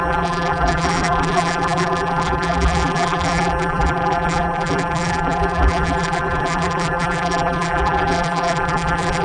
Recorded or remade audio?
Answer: remade